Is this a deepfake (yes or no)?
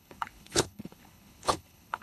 yes